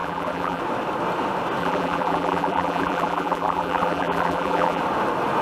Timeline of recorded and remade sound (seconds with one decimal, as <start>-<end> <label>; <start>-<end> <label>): 0.0-0.6 remade; 0.6-1.6 recorded; 1.6-4.8 remade; 4.8-5.4 recorded